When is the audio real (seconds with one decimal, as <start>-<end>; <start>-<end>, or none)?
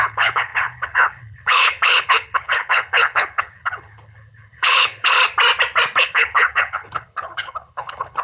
5.2-6.0